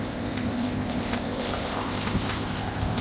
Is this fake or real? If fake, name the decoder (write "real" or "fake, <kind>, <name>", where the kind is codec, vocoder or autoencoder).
fake, codec, ZipCodec